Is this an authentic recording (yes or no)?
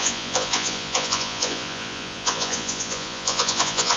no